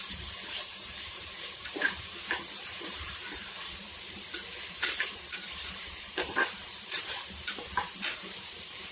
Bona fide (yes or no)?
no